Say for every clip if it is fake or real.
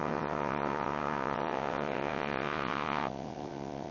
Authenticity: fake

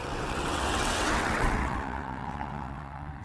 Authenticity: fake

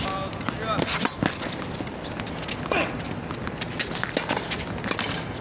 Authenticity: real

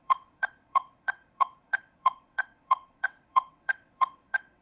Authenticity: fake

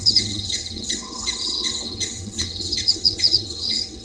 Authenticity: fake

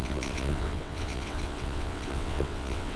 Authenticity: fake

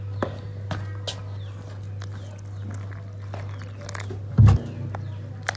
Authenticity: real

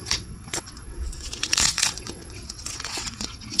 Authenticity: fake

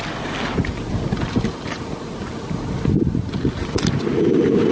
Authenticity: real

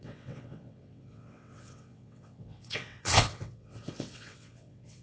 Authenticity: fake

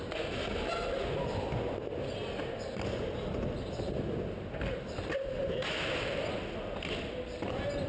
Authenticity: real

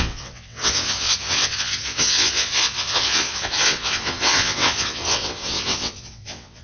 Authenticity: fake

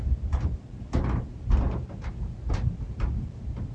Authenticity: real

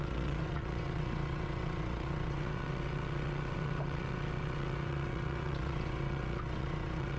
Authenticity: fake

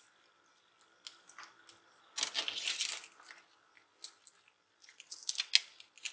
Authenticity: real